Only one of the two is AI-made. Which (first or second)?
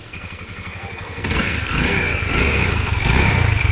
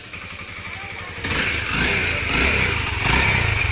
first